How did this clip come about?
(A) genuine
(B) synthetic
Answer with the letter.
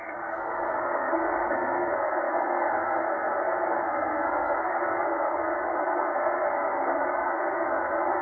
B